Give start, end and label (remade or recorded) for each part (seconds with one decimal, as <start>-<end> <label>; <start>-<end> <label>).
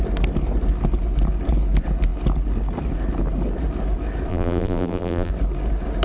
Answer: 0.0-4.3 recorded; 4.3-5.3 remade; 5.3-6.0 recorded